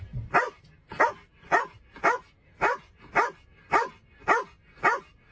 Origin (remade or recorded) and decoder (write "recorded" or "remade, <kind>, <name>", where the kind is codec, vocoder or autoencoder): recorded